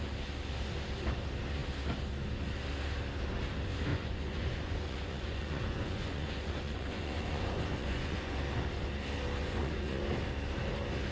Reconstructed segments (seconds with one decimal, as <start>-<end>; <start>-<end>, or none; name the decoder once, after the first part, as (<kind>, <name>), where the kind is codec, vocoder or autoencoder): 3.9-8.4 (vocoder, Vocos); 9.4-10.0